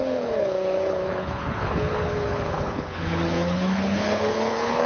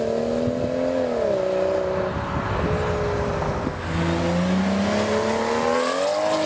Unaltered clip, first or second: second